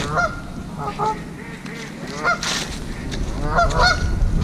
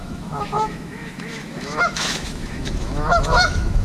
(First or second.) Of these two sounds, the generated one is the second